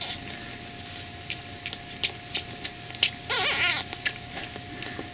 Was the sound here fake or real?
real